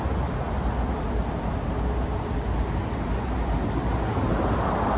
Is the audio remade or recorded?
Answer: recorded